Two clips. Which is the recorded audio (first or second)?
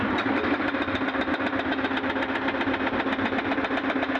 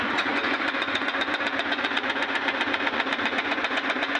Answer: first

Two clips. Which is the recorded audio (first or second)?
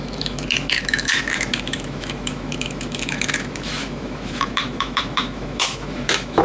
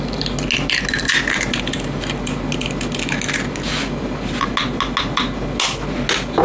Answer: second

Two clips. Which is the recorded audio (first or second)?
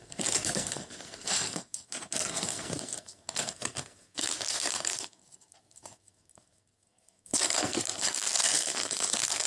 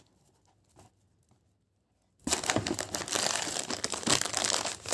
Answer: second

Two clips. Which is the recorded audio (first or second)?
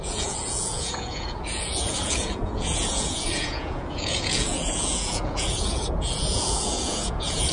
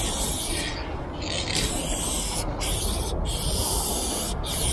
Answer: second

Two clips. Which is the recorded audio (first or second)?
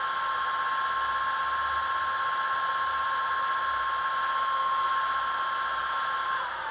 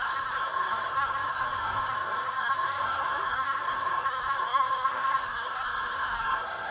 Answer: first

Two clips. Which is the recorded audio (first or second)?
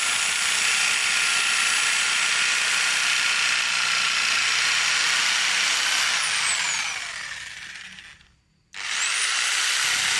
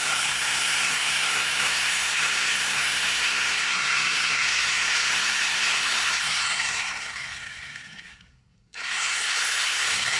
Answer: first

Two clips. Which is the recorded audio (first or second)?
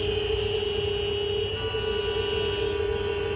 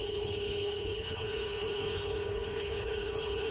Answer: first